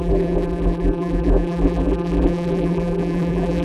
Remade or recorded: remade